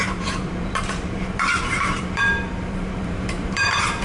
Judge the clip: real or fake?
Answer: fake